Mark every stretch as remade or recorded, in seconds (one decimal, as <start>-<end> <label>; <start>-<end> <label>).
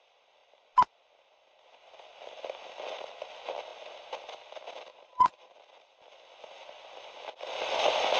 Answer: 0.0-4.9 recorded; 4.9-5.5 remade; 5.5-8.2 recorded